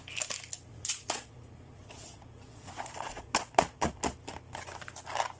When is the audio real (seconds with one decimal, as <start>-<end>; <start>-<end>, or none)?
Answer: 0.0-0.7; 3.9-5.4

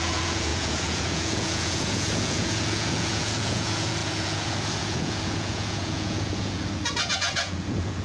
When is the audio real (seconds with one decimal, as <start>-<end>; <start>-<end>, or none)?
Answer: none

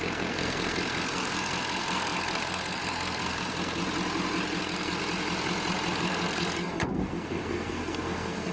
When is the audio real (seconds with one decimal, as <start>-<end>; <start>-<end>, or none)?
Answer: 3.8-4.6; 5.0-5.9